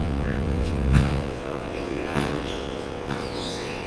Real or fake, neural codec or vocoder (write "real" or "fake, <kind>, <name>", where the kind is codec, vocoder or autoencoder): fake, vocoder, WaveNeXt